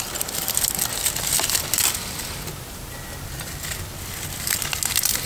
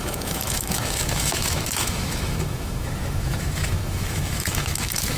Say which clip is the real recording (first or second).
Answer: first